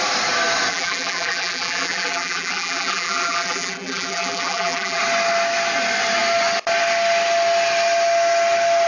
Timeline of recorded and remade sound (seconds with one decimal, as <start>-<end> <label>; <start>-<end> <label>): 0.0-0.7 recorded; 0.7-5.0 remade; 5.0-8.9 recorded